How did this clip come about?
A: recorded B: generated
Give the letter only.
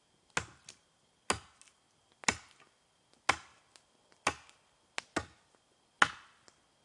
A